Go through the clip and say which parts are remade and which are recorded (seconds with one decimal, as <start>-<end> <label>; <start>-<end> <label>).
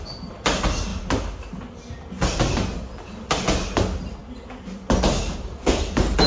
0.0-6.3 recorded